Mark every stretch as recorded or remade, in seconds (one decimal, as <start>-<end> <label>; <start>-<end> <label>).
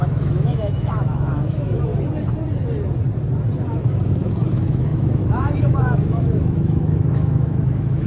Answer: 0.0-1.9 remade; 1.9-3.7 recorded; 3.7-8.1 remade